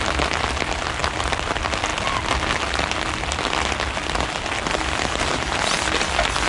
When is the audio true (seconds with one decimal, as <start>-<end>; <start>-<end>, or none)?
0.0-6.5